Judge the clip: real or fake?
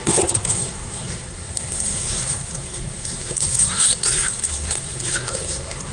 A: fake